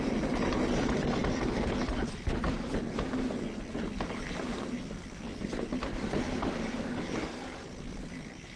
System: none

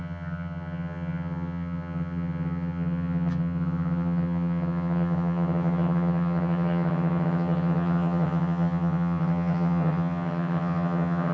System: vocoder, HiFi-GAN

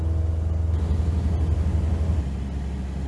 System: none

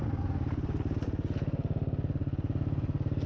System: none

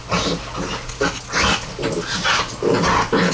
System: none